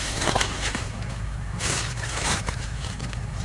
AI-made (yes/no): yes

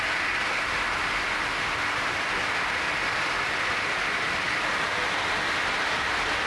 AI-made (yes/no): no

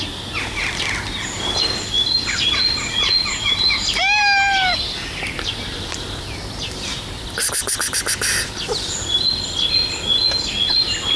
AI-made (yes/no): no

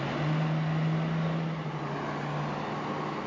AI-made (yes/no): no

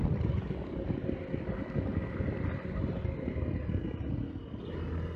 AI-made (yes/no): no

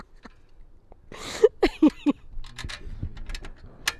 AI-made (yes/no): no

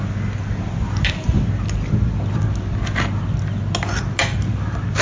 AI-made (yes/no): no